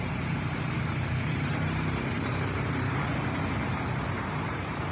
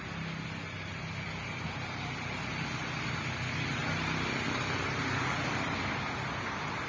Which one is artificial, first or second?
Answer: first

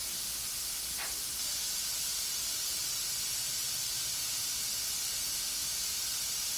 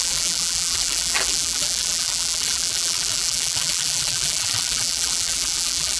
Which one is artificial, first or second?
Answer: second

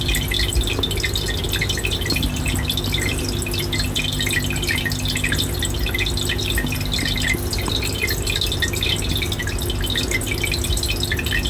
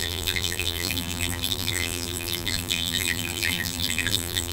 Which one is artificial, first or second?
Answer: second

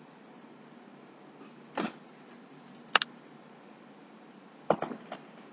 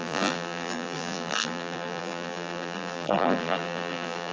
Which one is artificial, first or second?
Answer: second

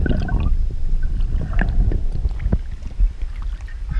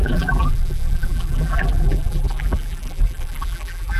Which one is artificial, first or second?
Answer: second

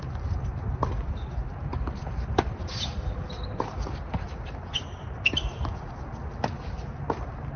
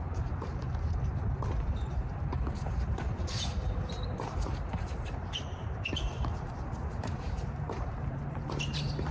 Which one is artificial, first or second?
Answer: second